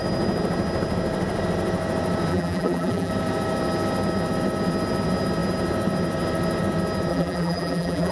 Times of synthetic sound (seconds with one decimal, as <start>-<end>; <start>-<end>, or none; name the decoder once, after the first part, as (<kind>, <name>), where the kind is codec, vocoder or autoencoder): 2.3-3.1 (vocoder, BigVGAN v2); 7.1-8.1